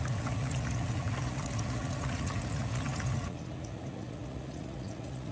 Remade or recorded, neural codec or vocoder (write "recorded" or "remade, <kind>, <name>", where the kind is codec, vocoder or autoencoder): remade, vocoder, Vocos